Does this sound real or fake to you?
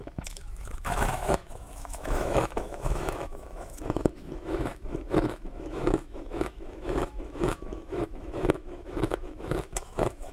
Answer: fake